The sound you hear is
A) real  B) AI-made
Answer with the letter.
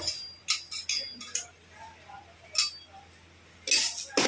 A